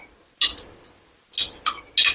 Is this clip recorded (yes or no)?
yes